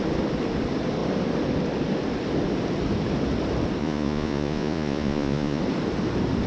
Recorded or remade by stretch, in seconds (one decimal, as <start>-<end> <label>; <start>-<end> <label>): 0.0-3.8 recorded; 3.8-5.6 remade; 5.6-6.5 recorded